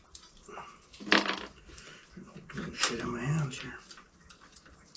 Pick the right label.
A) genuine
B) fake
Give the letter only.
A